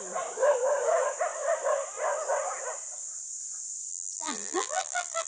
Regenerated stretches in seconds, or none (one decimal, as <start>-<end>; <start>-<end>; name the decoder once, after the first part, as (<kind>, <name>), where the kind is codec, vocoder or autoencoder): 3.9-5.3 (vocoder, BigVGAN v2)